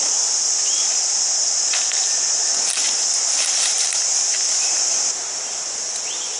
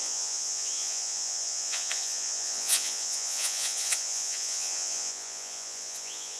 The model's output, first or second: second